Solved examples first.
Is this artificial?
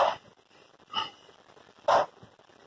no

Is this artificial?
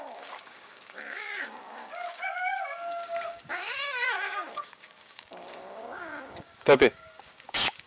yes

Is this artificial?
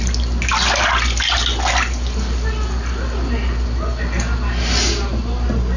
no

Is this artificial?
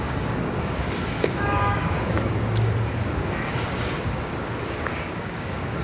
yes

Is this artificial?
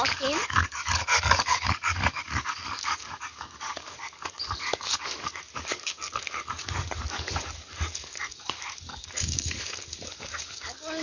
yes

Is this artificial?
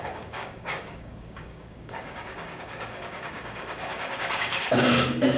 yes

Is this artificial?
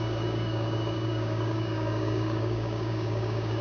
yes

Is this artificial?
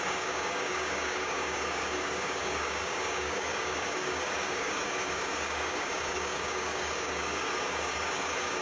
yes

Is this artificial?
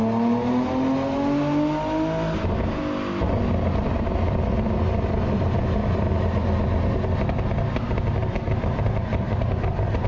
no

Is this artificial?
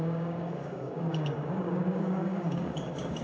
yes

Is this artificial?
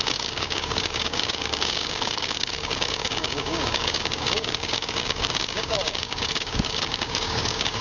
yes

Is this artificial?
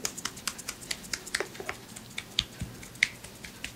no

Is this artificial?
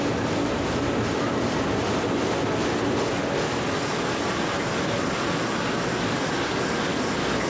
no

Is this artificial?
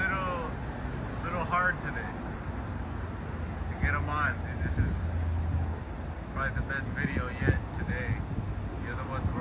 no